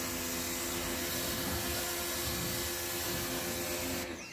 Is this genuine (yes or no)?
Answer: yes